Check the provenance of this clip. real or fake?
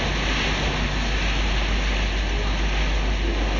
real